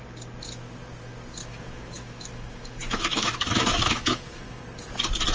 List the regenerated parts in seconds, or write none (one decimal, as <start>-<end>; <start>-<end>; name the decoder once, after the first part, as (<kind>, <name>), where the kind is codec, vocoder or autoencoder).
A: 1.4-4.6 (autoencoder, DAC-VAE)